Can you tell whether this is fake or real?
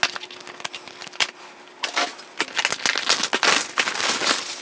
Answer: real